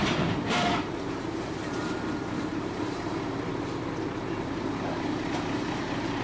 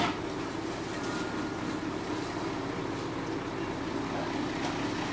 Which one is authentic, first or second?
second